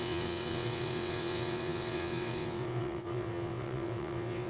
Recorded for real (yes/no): no